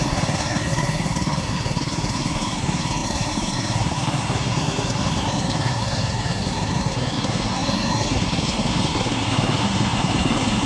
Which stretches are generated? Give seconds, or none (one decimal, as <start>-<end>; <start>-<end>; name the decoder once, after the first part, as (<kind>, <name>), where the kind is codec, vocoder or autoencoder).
0.0-10.7 (codec, SNAC)